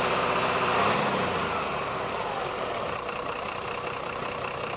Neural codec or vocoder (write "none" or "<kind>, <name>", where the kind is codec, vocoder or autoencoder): vocoder, BigVGAN v2